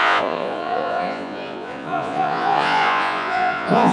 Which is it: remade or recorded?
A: remade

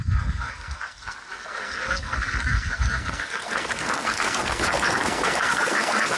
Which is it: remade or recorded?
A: remade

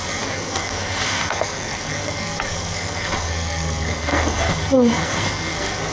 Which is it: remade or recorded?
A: remade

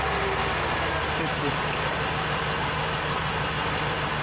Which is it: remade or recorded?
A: recorded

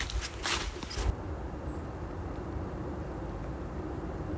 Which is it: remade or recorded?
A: recorded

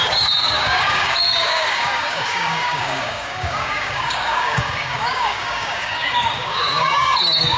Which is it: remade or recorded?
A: remade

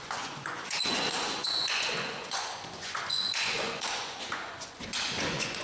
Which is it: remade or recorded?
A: remade